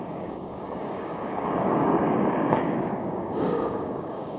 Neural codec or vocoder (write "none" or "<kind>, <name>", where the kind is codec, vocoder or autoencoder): codec, DAC